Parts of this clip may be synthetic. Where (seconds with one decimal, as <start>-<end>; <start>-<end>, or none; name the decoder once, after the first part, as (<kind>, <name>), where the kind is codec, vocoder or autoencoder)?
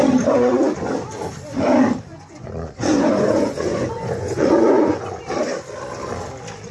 2.1-5.2 (vocoder, Vocos)